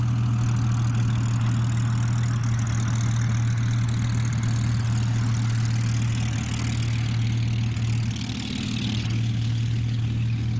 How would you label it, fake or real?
real